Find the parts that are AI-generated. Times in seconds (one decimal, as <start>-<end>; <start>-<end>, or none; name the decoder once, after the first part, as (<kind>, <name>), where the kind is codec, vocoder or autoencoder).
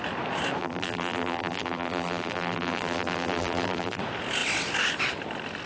0.6-4.0 (vocoder, BigVGAN v2)